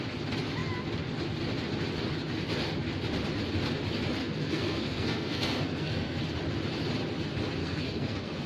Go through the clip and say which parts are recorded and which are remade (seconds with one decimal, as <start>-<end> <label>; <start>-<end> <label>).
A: 0.0-4.2 recorded; 4.2-6.2 remade; 6.2-7.6 recorded; 7.6-8.5 remade